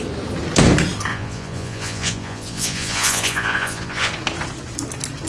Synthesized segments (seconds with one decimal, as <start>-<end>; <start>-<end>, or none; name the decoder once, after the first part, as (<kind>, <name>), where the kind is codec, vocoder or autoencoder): 1.1-4.1 (vocoder, Vocos)